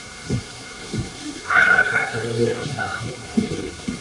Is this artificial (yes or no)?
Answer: yes